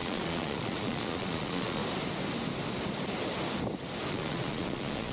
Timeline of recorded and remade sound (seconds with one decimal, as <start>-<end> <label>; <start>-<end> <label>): 0.0-1.8 remade; 1.8-4.1 recorded; 4.1-5.1 remade